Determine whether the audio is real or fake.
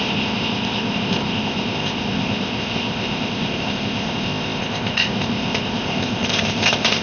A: fake